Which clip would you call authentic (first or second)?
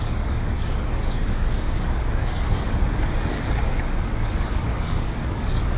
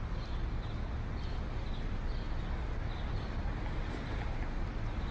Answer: second